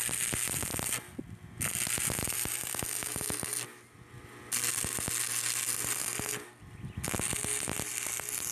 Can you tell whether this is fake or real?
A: real